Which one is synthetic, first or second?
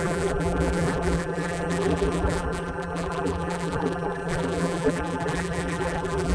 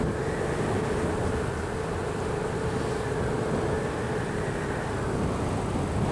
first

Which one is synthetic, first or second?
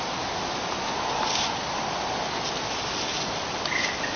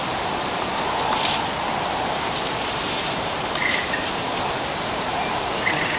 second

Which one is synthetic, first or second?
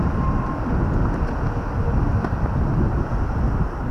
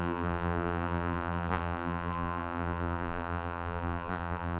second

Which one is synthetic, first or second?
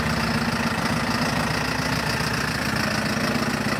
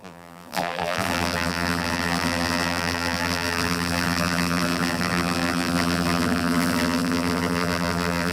second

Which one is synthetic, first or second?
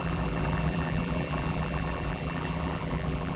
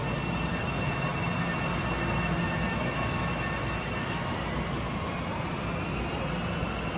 first